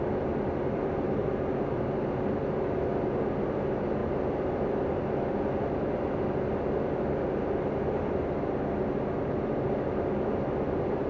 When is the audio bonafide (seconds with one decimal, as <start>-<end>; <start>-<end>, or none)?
0.0-11.1